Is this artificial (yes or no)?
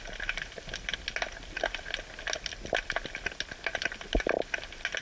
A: no